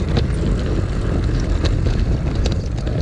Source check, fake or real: real